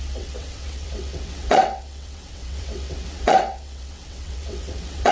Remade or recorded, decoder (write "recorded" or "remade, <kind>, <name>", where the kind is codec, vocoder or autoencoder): remade, vocoder, WaveNeXt